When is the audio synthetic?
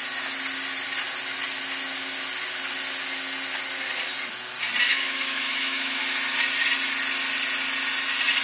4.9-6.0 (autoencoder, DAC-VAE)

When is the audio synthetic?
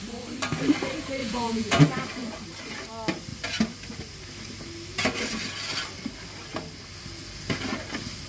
1.2-1.8 (vocoder, Vocos)